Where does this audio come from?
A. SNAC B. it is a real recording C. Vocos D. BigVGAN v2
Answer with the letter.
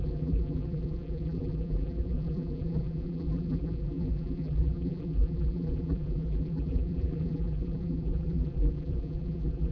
D